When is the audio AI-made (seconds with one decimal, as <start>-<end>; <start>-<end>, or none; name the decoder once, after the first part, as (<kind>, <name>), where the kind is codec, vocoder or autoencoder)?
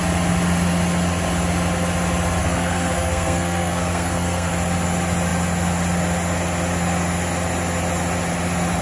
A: 2.4-4.5 (codec, SNAC)